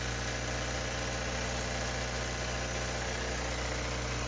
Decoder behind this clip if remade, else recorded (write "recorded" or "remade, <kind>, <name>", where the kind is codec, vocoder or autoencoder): recorded